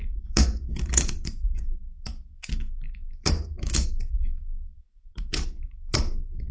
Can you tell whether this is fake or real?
fake